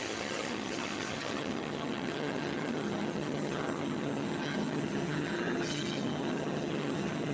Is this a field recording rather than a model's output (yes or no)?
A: no